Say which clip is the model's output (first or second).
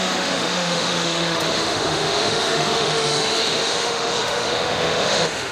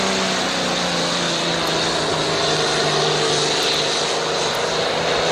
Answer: first